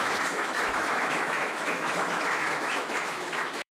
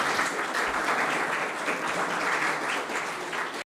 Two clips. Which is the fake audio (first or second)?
first